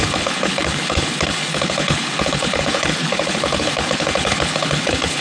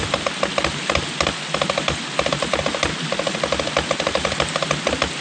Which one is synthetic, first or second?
first